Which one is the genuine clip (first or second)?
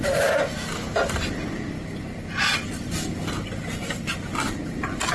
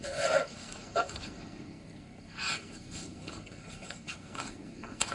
first